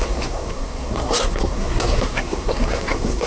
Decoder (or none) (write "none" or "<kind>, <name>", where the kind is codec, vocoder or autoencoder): codec, SNAC